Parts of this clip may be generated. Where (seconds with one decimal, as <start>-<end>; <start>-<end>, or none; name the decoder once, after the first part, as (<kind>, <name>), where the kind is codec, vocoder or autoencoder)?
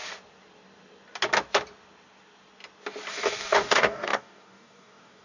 3.1-5.2 (codec, DAC)